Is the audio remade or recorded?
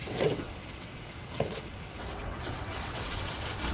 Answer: remade